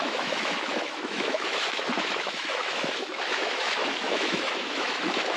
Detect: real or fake fake